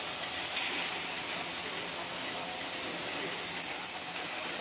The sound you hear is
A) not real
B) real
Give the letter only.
B